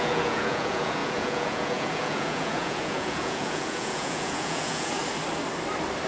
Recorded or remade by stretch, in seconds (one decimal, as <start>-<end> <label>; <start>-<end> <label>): 0.0-5.0 remade; 5.0-6.1 recorded